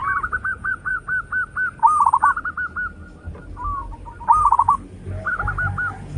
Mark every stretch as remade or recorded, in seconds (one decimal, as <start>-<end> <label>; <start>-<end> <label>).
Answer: 0.0-1.0 remade; 1.0-6.2 recorded